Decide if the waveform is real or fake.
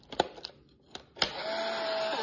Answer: real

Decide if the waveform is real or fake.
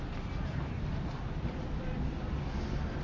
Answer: real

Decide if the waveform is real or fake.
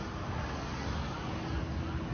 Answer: real